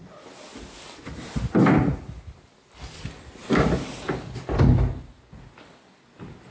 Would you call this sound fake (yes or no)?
no